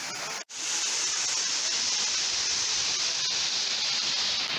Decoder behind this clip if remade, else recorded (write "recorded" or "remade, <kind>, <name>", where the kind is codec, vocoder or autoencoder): recorded